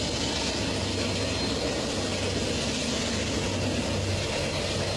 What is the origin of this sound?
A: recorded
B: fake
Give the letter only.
A